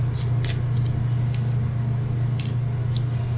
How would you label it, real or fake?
real